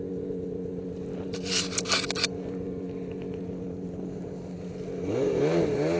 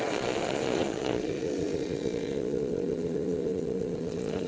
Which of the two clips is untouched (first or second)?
first